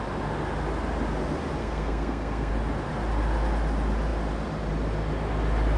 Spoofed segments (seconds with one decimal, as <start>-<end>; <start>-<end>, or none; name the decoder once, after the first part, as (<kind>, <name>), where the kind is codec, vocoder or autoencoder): 1.6-2.5 (codec, SNAC)